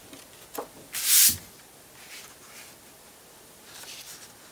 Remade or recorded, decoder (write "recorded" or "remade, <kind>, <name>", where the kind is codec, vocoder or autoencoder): recorded